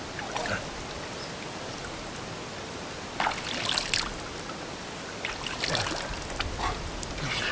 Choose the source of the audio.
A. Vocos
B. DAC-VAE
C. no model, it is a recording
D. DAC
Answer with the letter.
C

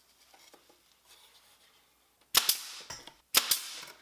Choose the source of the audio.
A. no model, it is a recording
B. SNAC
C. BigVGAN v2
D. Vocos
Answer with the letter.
A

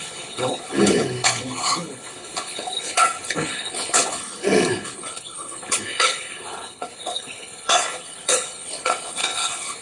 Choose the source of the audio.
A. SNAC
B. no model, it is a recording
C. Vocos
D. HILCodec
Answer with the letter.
D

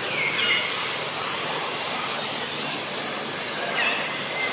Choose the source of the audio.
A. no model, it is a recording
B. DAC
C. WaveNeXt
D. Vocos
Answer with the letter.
A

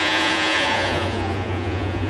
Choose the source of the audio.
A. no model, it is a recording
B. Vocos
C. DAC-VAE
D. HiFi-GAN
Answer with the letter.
B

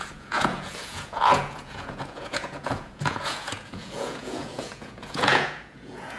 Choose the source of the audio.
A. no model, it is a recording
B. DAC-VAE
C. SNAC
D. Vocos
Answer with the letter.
D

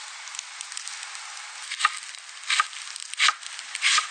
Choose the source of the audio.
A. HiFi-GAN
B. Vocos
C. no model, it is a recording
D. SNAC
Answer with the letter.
C